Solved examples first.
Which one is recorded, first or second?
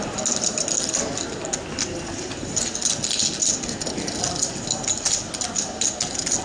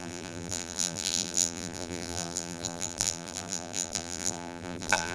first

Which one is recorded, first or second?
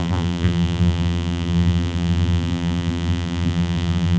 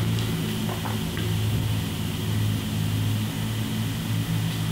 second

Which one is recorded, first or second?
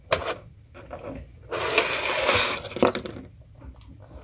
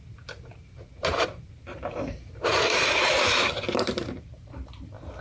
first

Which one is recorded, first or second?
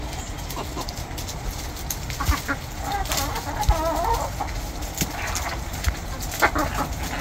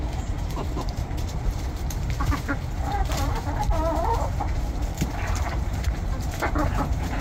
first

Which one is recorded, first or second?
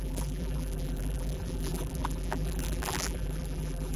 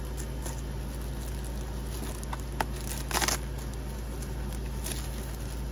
second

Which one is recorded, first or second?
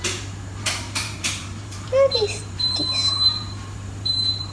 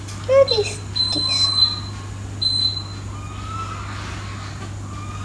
second